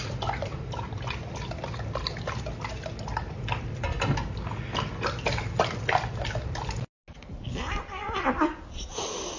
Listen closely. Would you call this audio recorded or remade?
recorded